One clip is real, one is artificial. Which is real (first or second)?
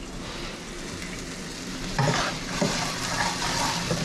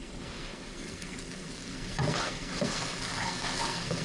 first